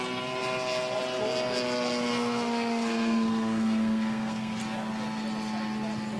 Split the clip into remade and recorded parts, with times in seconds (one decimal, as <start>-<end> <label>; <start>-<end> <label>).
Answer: 0.0-2.1 recorded; 2.1-4.6 remade; 4.6-6.2 recorded